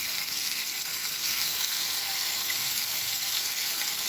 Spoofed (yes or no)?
yes